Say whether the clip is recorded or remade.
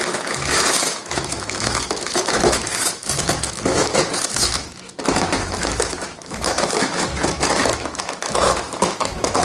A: remade